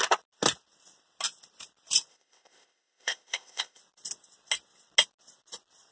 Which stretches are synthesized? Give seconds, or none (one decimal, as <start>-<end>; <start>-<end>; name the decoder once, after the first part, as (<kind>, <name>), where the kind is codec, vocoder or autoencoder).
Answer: 2.1-3.8 (codec, ZipCodec)